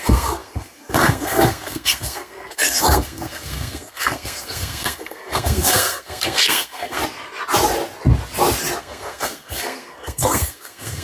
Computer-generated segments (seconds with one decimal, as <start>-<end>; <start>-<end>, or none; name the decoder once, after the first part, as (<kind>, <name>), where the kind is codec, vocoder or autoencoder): 0.0-7.0 (codec, SNAC); 8.8-11.0